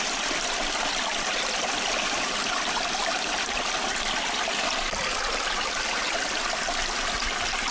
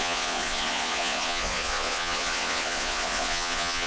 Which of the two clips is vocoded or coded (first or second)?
second